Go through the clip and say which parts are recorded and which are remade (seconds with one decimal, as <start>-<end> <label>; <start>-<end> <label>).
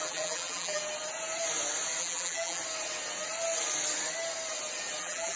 0.0-0.8 remade; 0.8-2.0 recorded; 2.0-2.6 remade; 2.6-5.0 recorded; 5.0-5.4 remade